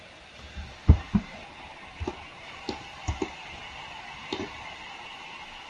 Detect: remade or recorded remade